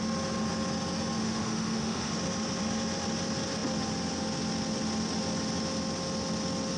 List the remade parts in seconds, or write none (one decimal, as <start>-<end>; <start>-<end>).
1.2-2.1